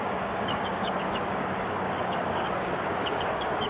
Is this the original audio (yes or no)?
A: no